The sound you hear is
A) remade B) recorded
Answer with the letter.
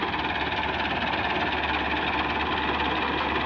B